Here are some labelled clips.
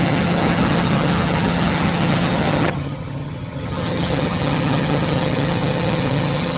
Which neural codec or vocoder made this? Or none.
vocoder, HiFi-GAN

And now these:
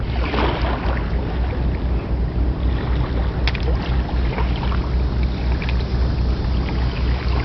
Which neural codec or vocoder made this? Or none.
none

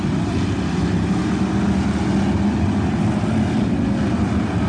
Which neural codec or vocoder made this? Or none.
none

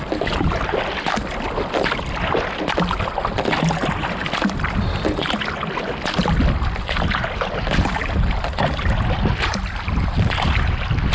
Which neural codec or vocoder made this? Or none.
none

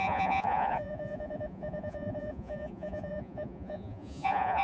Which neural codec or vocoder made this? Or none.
vocoder, Vocos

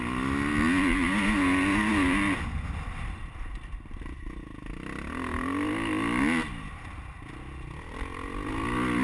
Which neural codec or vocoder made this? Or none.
none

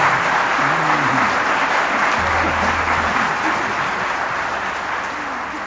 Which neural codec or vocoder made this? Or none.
none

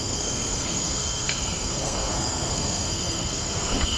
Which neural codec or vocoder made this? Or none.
codec, SNAC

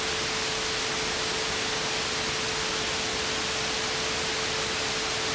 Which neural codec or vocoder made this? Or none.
none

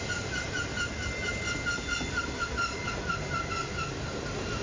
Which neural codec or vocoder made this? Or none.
none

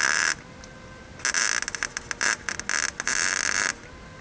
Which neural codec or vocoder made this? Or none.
none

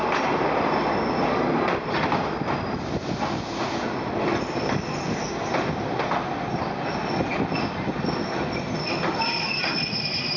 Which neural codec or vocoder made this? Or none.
none